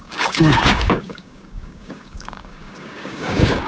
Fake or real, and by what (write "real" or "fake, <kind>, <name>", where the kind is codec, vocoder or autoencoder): fake, codec, DAC